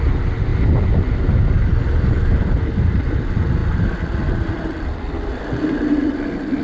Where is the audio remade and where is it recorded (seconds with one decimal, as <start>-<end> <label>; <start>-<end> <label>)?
0.0-0.5 remade; 0.5-2.9 recorded; 2.9-6.6 remade